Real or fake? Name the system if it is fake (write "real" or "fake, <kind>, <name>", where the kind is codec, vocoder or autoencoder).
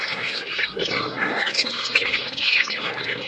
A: fake, codec, SNAC